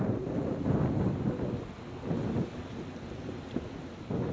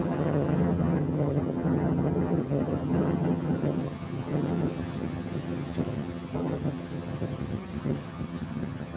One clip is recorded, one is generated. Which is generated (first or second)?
second